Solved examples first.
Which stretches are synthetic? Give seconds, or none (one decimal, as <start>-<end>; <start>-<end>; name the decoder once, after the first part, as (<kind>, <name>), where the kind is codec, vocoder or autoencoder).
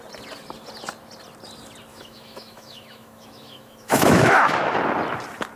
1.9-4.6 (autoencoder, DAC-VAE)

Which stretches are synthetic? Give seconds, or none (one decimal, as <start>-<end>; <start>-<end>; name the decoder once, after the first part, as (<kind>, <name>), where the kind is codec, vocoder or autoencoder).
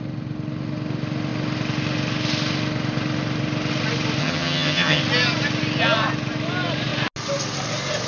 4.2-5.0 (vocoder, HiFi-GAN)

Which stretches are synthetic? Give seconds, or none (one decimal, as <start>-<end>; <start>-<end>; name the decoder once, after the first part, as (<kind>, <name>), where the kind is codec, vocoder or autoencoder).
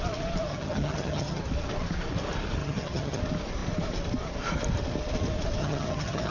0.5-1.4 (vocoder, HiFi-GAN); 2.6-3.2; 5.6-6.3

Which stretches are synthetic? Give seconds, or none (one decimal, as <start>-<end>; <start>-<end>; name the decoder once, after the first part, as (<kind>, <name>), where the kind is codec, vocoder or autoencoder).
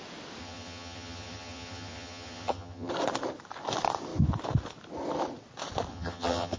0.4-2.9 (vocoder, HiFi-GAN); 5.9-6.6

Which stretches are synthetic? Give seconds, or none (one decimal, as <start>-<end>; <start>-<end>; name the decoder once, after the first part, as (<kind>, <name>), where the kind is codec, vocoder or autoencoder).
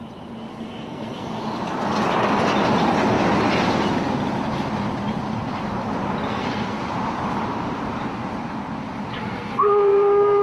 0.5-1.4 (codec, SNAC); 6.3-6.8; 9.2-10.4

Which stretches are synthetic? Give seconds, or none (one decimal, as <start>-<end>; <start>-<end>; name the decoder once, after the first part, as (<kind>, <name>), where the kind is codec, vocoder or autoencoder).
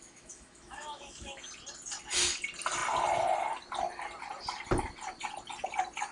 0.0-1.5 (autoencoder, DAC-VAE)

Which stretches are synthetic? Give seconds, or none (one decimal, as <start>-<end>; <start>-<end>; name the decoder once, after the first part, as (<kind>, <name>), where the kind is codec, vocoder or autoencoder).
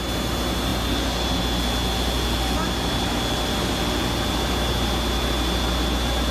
none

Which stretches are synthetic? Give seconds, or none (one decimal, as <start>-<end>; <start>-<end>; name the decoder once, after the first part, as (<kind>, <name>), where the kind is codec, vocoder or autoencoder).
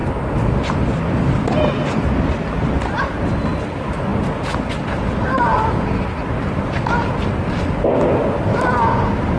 none